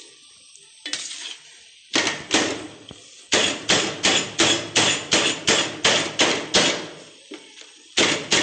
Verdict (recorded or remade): recorded